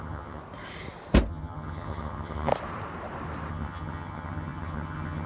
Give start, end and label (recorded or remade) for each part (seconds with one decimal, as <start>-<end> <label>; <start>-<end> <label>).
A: 0.0-0.4 remade; 0.4-1.3 recorded; 1.3-2.5 remade; 2.5-3.5 recorded; 3.5-5.3 remade

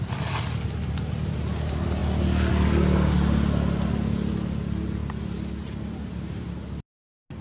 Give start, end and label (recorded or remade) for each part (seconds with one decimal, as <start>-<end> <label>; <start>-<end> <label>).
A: 0.0-7.4 recorded